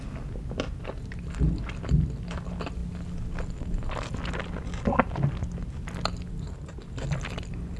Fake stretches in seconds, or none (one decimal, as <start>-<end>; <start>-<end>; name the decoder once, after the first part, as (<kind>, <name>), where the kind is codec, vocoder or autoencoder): none